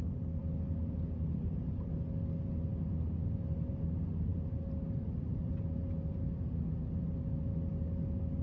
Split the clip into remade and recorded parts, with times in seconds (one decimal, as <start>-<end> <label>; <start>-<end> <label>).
0.0-8.4 recorded